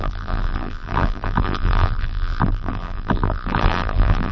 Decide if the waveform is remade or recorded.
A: remade